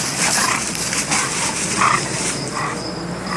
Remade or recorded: recorded